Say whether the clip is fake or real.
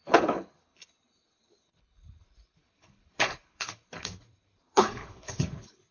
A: fake